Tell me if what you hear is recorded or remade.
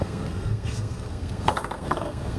remade